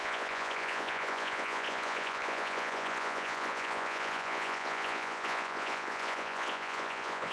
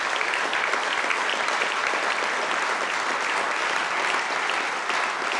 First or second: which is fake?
first